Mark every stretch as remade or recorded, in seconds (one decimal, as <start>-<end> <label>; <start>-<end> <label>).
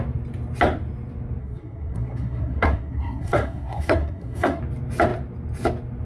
0.0-1.4 recorded; 1.4-4.6 remade; 4.6-6.0 recorded